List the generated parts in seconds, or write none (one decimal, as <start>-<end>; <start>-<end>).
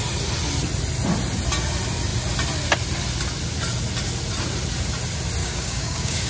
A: 5.4-6.3